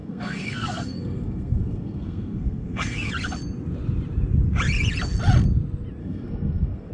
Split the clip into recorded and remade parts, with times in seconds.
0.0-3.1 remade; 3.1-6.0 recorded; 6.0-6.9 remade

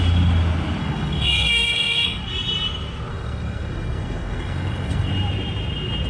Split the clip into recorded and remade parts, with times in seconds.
0.0-0.8 recorded; 0.8-2.2 remade; 2.2-3.1 recorded; 3.1-5.1 remade; 5.1-6.1 recorded